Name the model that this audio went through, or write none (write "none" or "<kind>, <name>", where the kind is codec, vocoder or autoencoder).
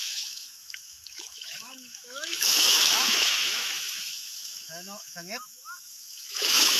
autoencoder, DAC-VAE